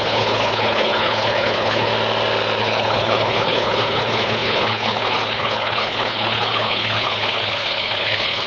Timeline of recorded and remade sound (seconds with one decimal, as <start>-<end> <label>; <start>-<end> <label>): 0.0-1.9 remade; 1.9-2.6 recorded; 2.6-8.5 remade